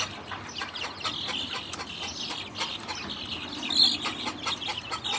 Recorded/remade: recorded